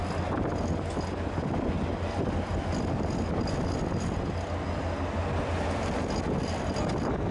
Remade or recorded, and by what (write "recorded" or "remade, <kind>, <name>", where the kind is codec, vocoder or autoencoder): recorded